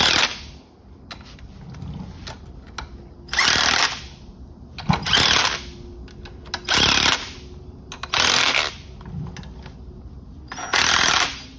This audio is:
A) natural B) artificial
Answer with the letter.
A